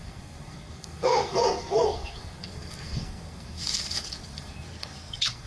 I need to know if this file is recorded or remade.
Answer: remade